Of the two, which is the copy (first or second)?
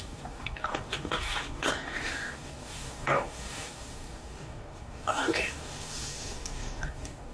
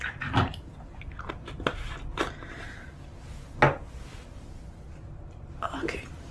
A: first